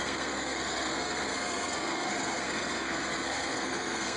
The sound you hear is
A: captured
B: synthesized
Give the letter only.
B